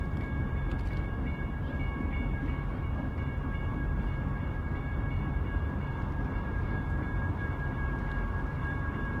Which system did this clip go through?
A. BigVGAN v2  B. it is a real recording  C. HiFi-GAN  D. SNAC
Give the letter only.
A